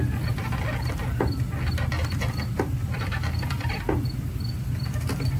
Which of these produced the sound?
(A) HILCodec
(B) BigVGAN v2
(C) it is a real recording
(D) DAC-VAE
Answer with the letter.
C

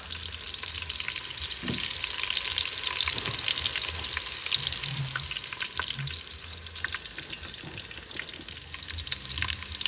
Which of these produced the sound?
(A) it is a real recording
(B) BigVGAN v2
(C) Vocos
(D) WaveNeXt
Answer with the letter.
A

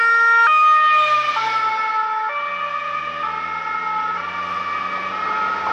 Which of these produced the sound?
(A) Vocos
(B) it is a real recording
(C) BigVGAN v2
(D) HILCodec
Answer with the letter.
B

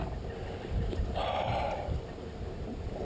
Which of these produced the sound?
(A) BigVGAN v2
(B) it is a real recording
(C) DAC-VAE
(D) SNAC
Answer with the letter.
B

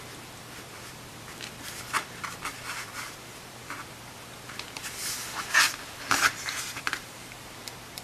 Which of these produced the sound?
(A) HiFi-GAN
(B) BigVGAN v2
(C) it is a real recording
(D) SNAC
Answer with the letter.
B